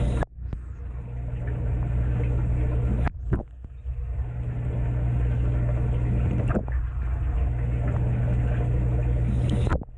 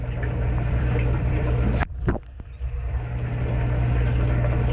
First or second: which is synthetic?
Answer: second